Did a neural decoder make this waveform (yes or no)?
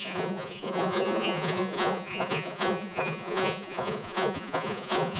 yes